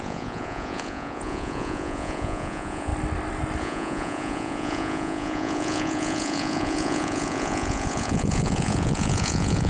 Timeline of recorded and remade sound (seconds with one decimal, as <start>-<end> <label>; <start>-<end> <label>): 0.0-2.9 remade; 2.9-3.6 recorded; 3.6-9.7 remade